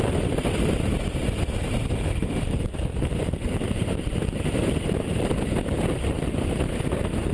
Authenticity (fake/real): fake